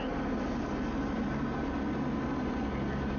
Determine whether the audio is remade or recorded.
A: recorded